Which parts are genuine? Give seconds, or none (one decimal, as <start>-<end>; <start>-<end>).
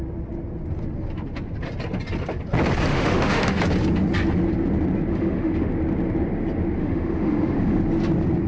0.0-2.9; 3.6-5.1; 5.7-6.8; 7.8-8.5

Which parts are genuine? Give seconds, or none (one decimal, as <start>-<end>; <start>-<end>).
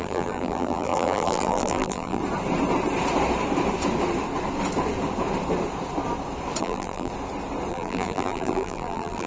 2.2-6.6; 7.1-7.7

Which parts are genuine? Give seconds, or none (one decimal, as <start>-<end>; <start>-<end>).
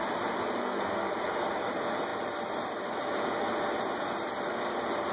0.0-0.6; 1.1-5.1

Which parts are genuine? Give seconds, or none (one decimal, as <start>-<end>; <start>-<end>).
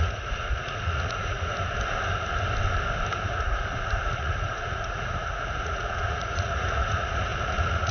1.5-3.2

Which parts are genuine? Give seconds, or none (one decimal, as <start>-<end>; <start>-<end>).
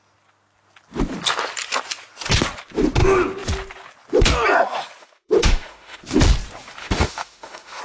0.0-5.0; 6.0-6.8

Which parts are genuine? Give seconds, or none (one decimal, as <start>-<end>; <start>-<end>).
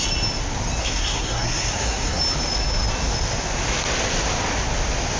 0.0-0.8; 2.2-5.2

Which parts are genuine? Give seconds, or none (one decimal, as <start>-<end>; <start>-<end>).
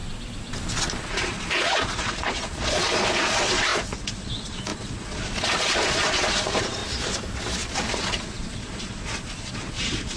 0.0-1.0; 6.8-7.9